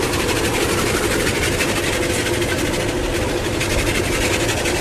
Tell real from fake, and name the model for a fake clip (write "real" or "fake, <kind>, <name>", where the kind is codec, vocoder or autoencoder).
real